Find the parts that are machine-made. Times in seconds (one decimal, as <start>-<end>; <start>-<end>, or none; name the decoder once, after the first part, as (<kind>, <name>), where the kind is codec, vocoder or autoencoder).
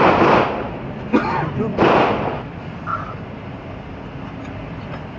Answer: none